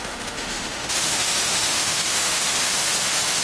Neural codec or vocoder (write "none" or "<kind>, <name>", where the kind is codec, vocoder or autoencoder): autoencoder, DAC-VAE